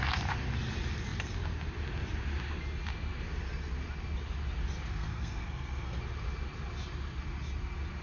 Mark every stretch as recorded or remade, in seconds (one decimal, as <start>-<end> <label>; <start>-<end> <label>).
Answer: 0.0-5.0 recorded; 5.0-6.0 remade; 6.0-8.0 recorded